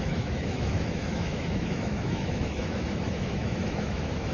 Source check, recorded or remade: remade